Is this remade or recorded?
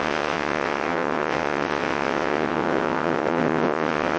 remade